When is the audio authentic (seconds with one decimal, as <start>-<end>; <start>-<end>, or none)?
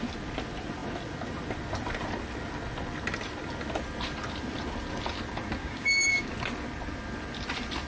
0.0-5.6; 6.3-7.9